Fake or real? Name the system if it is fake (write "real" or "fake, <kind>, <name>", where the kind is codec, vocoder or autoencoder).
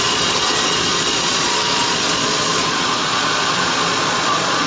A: fake, vocoder, Vocos